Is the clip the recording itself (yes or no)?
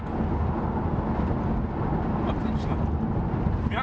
yes